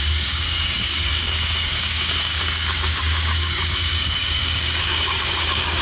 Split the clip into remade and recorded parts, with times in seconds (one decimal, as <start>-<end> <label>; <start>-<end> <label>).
0.0-5.8 remade